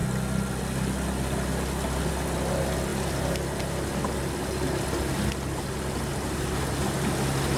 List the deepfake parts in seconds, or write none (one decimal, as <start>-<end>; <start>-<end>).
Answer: none